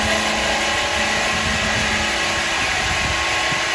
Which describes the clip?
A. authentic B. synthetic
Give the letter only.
A